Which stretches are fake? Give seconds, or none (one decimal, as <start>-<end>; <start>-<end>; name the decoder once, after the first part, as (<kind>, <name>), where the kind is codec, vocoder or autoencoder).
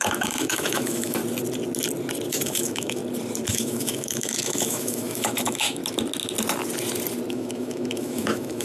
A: 0.0-1.2 (autoencoder, DAC-VAE); 2.3-3.0; 3.5-5.8; 7.3-8.6